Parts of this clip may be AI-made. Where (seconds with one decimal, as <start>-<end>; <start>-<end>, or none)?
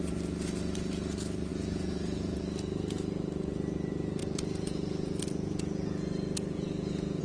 1.5-2.4; 4.2-7.2